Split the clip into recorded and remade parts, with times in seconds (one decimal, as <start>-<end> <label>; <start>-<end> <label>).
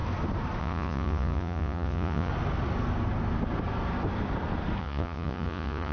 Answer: 0.0-0.6 recorded; 0.6-2.3 remade; 2.3-4.8 recorded; 4.8-5.9 remade